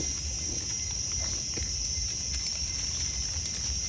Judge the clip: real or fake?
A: real